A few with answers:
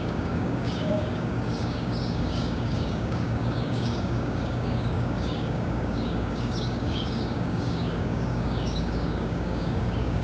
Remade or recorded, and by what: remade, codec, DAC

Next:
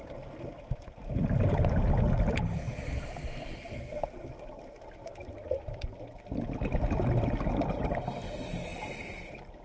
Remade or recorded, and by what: recorded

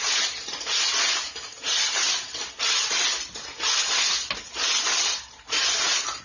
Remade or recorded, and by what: recorded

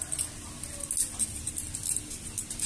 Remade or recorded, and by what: recorded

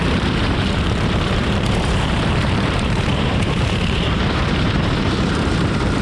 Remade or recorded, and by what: remade, vocoder, BigVGAN v2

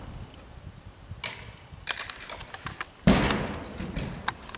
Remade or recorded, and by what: recorded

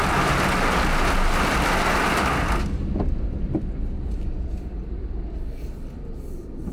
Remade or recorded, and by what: recorded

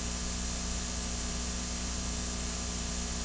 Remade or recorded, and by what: recorded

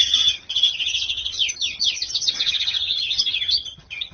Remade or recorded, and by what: remade, vocoder, HiFi-GAN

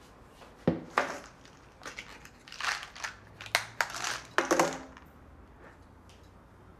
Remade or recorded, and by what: recorded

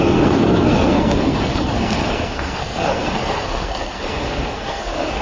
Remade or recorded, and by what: remade, codec, SNAC